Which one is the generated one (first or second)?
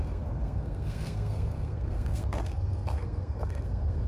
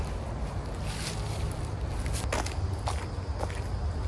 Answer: first